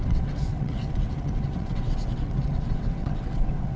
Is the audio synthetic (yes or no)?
yes